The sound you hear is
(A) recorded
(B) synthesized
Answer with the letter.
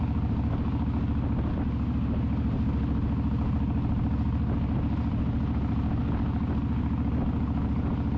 A